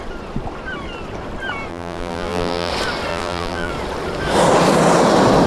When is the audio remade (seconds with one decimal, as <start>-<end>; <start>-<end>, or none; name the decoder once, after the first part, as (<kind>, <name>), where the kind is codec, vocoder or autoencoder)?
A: 1.7-2.7 (vocoder, BigVGAN v2); 3.1-3.7

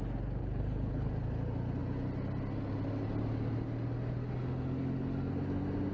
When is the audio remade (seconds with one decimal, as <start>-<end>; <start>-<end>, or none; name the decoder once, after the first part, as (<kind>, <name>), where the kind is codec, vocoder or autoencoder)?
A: 0.4-1.1 (codec, HILCodec)

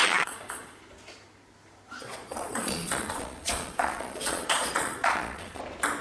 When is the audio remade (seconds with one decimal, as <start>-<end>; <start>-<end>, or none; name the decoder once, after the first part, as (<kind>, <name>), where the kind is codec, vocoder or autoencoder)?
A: 0.0-0.8 (vocoder, Vocos); 2.0-5.6

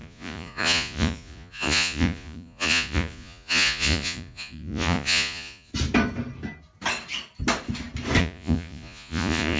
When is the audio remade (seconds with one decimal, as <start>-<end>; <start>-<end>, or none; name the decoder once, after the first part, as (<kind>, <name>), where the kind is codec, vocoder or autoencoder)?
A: 0.0-5.7 (vocoder, Vocos); 8.2-9.6

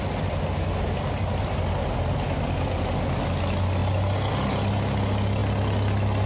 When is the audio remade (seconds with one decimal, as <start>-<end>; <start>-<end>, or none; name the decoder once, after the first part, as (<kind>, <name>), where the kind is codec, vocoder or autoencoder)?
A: none

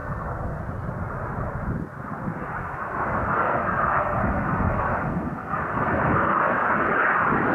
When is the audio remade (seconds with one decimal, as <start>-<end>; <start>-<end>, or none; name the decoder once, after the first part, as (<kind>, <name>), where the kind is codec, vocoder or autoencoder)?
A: 0.0-0.6 (codec, SNAC); 2.6-6.7